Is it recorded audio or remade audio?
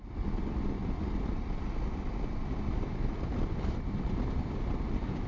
remade